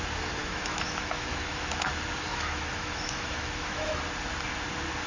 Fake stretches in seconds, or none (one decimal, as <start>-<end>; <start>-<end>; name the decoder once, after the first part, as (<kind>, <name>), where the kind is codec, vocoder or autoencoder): 0.4-1.9 (autoencoder, DAC-VAE); 2.3-4.0